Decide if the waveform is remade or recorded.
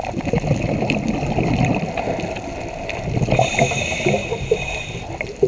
recorded